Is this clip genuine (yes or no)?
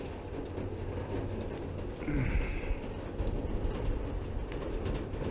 yes